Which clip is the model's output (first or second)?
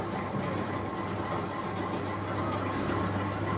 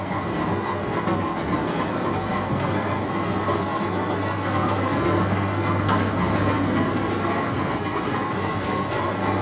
second